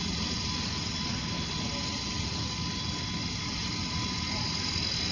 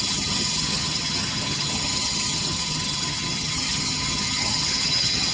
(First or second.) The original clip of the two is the first